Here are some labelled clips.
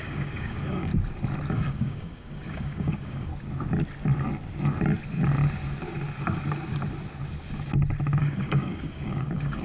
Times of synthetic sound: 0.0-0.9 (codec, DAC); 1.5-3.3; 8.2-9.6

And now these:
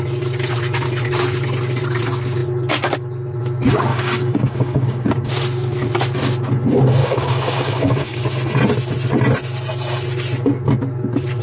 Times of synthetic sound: 3.9-5.3 (codec, DAC); 7.0-8.2

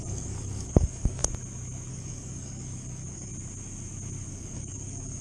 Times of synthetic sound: 0.0-1.2 (codec, DAC); 1.9-3.3; 4.3-5.2

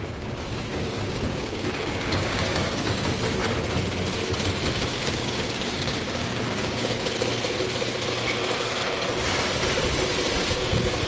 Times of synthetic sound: 0.0-3.4 (codec, DAC); 4.7-7.3; 10.5-11.1

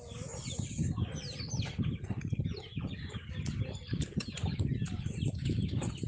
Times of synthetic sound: none